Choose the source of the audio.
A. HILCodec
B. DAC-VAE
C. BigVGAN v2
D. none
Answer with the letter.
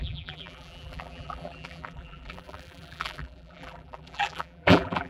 C